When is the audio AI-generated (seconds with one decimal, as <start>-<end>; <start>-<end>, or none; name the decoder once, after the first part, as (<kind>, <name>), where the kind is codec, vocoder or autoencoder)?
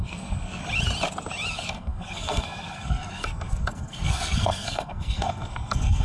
0.0-0.6 (codec, SNAC); 1.5-6.0